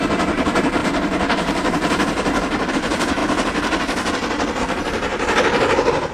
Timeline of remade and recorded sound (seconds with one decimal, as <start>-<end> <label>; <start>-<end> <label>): 0.0-3.2 remade; 3.2-4.6 recorded; 4.6-5.1 remade; 5.1-6.1 recorded